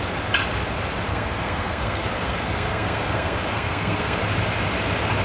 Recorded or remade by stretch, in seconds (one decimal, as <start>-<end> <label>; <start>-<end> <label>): 0.0-1.1 recorded; 1.1-4.2 remade; 4.2-5.2 recorded